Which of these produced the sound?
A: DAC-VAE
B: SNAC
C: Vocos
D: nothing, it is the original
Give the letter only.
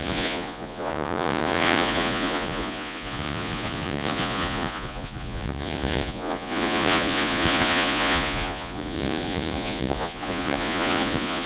C